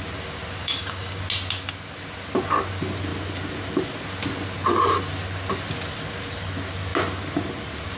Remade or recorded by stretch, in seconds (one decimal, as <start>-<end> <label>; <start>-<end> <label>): 0.0-0.6 recorded; 0.6-1.2 remade; 1.2-8.0 recorded